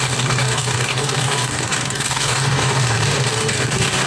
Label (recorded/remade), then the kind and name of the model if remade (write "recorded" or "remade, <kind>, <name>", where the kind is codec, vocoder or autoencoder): remade, codec, DAC